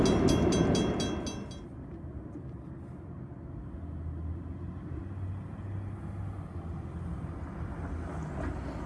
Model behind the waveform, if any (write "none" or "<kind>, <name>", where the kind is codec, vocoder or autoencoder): none